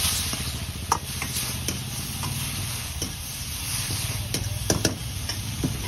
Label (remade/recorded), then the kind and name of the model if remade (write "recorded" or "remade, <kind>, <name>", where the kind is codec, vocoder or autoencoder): recorded